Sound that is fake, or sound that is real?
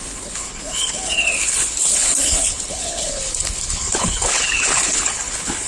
fake